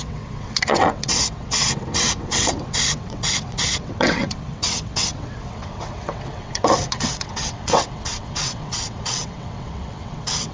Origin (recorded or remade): remade